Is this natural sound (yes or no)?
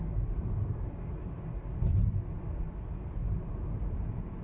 yes